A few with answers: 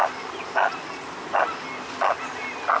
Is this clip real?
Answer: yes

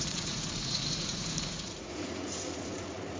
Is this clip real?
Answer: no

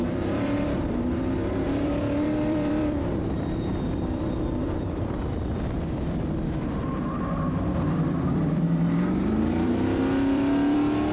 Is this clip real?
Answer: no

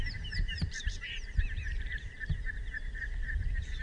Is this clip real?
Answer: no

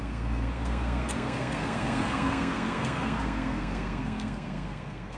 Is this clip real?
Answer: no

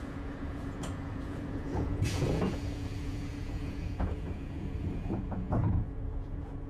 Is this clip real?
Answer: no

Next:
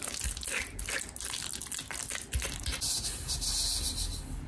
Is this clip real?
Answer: yes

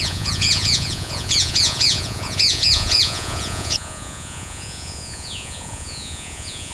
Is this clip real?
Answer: no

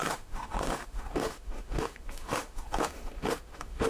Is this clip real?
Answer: no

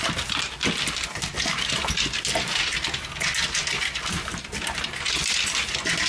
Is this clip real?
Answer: yes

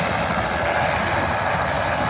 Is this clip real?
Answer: yes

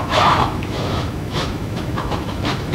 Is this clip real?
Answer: no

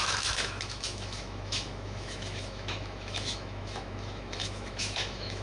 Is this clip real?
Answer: no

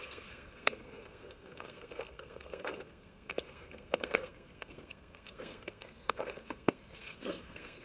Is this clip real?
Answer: no